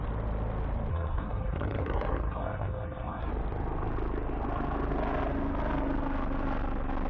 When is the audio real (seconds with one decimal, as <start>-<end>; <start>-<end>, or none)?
0.0-0.9; 3.3-7.1